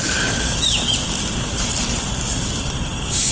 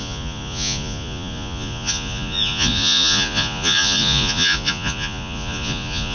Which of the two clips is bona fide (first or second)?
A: first